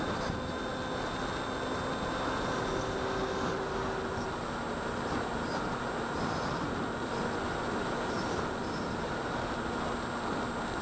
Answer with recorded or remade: recorded